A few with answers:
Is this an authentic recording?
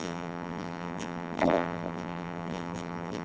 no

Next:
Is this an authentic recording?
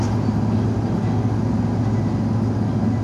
yes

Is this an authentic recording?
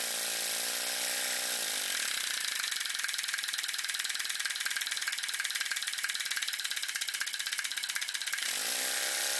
yes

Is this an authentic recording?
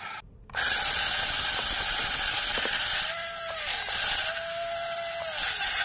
yes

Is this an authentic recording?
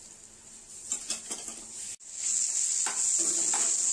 yes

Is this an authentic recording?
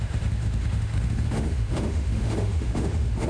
no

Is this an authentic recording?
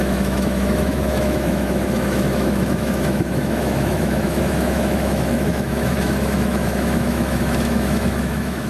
no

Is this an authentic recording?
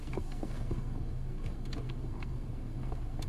no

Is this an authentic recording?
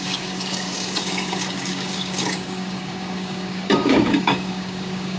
no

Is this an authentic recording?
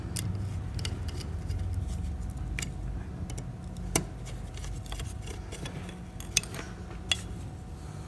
yes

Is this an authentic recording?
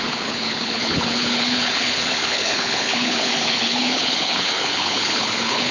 no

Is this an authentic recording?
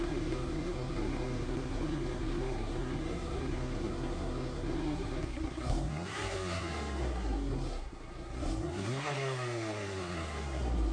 no